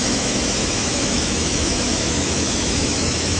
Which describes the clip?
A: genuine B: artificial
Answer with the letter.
B